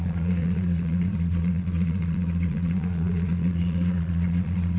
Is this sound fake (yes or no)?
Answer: yes